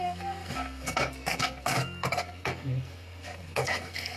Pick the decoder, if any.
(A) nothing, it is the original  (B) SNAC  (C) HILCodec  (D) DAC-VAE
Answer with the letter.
B